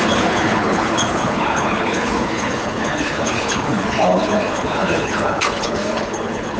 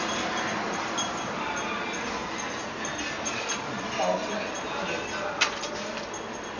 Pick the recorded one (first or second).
second